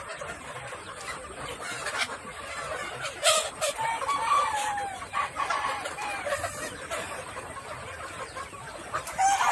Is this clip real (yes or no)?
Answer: yes